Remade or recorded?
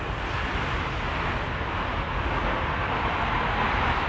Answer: recorded